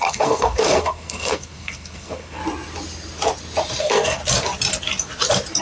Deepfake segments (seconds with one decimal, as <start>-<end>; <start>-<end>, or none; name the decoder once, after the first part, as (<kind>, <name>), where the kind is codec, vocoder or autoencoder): 0.0-2.4 (codec, SNAC); 3.8-4.2